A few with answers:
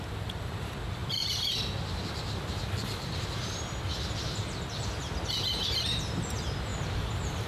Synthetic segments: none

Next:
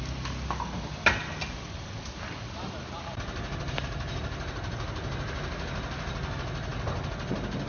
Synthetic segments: none